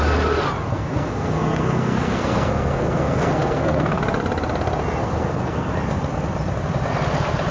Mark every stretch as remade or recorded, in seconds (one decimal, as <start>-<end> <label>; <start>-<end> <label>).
0.0-0.7 recorded; 0.7-4.0 remade; 4.0-5.0 recorded; 5.0-5.7 remade; 5.7-7.5 recorded